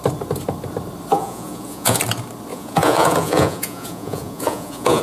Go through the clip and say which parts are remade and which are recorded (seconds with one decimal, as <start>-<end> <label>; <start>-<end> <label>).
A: 0.0-1.1 recorded; 1.1-2.0 remade; 2.0-2.5 recorded; 2.5-5.0 remade